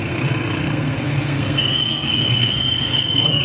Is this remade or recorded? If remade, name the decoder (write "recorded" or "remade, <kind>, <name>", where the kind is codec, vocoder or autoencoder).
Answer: remade, codec, SNAC